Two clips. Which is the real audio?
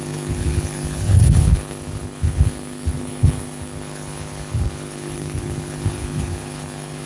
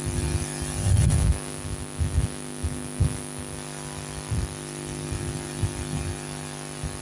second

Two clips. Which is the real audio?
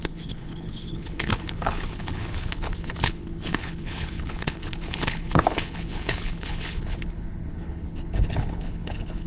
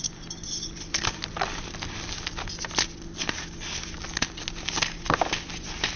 second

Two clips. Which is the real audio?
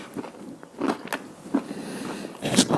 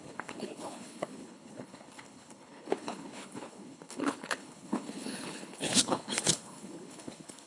first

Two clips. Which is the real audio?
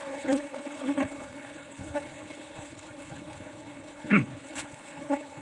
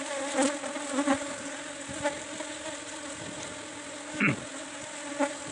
second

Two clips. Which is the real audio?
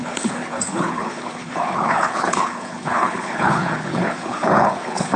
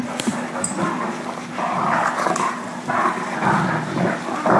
second